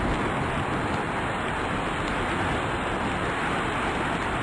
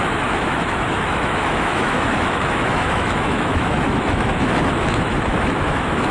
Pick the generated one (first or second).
second